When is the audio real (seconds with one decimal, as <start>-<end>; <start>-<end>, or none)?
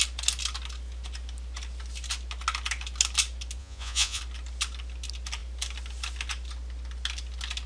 0.0-3.6; 4.2-7.7